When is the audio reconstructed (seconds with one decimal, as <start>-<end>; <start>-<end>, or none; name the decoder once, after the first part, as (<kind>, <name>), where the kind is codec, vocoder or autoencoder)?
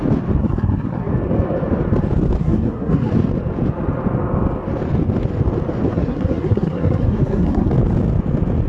0.4-1.1 (codec, SNAC); 2.4-3.1; 5.9-7.7